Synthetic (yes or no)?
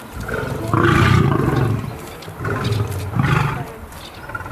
no